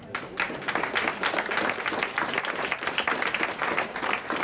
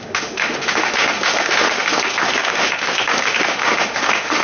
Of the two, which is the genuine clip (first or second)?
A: first